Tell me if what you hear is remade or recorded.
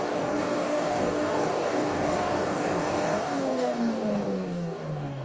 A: remade